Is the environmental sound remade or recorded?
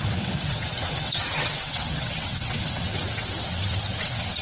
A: remade